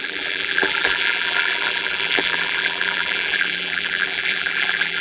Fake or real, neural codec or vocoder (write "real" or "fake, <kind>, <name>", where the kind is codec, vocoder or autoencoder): fake, vocoder, BigVGAN v2